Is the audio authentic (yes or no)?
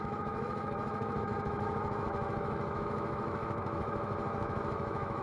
no